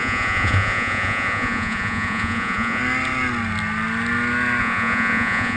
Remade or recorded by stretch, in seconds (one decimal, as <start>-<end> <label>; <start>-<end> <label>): 0.0-2.8 remade; 2.8-4.6 recorded; 4.6-5.6 remade